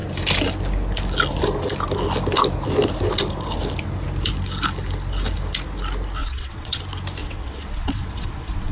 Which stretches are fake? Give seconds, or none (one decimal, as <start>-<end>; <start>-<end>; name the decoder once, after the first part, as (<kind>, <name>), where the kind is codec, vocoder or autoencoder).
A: 6.2-6.8 (vocoder, WaveNeXt); 7.2-8.7